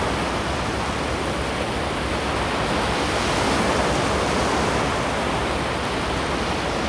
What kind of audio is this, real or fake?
real